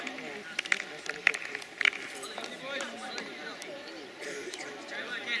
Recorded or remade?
recorded